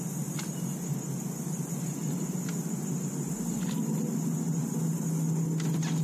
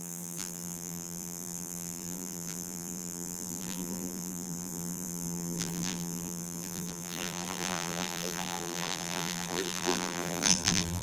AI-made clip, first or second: second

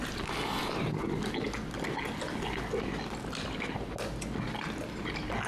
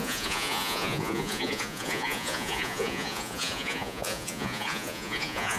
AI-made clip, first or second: second